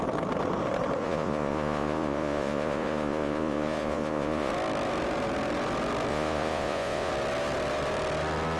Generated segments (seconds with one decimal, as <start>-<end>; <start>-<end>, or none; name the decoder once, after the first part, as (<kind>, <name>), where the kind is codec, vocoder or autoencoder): 1.0-4.5 (vocoder, Vocos); 6.1-7.1